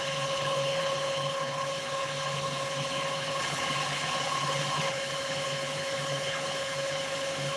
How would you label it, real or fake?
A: fake